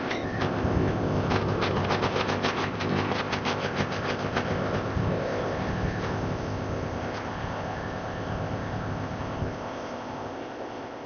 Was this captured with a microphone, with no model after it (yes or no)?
no